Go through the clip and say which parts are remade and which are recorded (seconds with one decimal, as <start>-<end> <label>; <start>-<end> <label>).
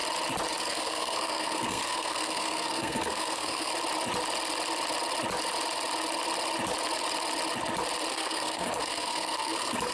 0.0-0.6 recorded; 0.6-3.7 remade; 3.7-8.1 recorded; 8.1-9.9 remade